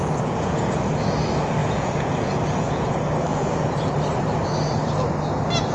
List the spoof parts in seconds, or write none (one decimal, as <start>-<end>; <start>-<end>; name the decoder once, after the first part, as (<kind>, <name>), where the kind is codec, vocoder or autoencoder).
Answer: 0.0-0.8 (vocoder, Vocos); 1.6-2.9; 3.3-3.9